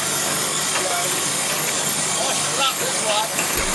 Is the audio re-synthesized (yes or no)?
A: yes